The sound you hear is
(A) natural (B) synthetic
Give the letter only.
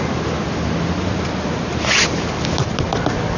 A